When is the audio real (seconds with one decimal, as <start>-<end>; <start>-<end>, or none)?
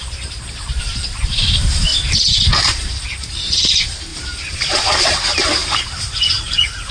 1.9-3.3; 4.1-5.1; 5.6-6.4